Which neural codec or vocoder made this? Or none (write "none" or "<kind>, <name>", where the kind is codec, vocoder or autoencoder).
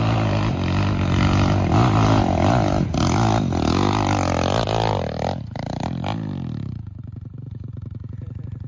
none